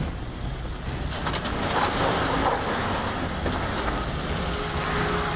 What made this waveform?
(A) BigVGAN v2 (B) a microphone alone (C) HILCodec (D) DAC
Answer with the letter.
B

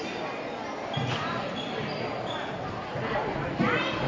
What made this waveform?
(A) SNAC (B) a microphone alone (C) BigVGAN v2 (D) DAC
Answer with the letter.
B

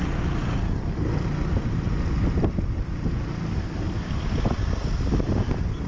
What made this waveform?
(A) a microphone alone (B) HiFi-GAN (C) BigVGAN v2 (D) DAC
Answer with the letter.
A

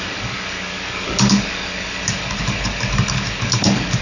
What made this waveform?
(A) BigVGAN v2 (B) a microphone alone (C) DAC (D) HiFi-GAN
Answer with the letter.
C